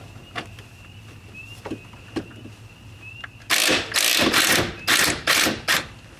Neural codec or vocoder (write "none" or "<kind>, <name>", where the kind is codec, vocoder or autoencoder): none